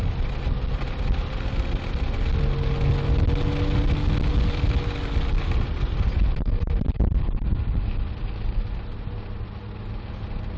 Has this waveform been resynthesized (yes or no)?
no